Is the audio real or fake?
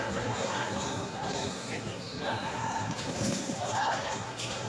fake